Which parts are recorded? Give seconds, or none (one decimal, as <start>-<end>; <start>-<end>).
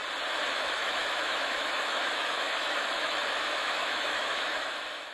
0.0-0.5